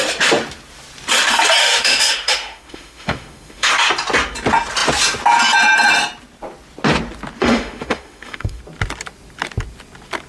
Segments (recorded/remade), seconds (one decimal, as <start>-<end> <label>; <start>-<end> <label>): 0.0-1.6 recorded; 1.6-3.7 remade; 3.7-7.4 recorded; 7.4-8.6 remade; 8.6-10.3 recorded